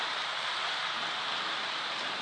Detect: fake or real real